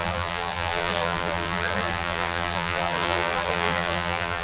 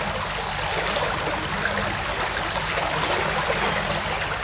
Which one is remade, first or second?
first